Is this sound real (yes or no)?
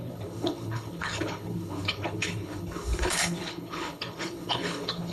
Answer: no